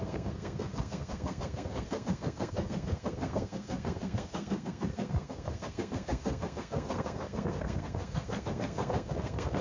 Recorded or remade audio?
remade